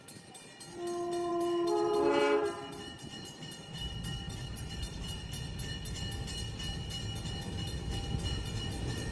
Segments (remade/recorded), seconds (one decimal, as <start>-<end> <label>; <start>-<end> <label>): 0.0-1.3 recorded; 1.3-5.2 remade; 5.2-9.1 recorded